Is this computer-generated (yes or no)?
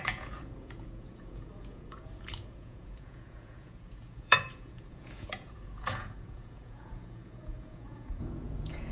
yes